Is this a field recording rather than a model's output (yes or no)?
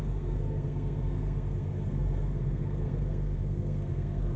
no